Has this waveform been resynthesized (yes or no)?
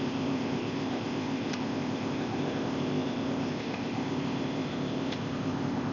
yes